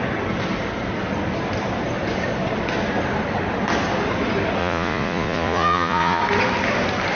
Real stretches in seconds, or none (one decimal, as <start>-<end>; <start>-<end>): 0.0-4.6; 6.2-7.1

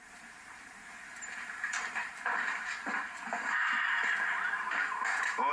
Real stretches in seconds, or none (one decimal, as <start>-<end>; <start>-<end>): 2.1-5.5

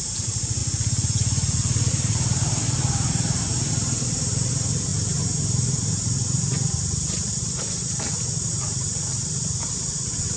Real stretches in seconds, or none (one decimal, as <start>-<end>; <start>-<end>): 0.6-1.9

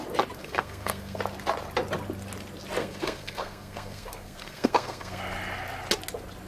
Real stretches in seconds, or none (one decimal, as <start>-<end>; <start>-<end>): 0.0-0.4; 1.2-2.8; 5.2-6.5

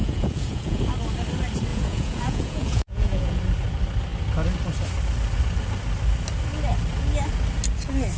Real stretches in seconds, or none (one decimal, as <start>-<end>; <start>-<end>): 0.8-1.7; 3.4-8.2